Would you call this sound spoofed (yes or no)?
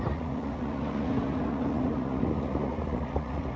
yes